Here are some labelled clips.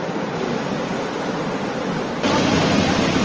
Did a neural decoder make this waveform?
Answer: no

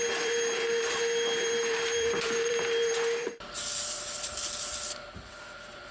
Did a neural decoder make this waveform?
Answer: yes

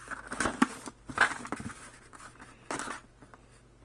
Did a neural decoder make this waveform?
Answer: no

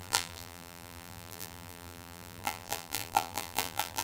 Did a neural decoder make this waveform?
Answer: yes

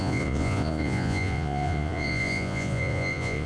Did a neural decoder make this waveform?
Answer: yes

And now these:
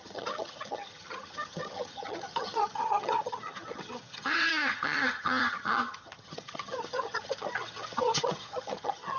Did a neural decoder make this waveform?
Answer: yes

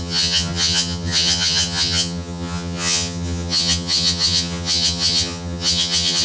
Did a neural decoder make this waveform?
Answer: yes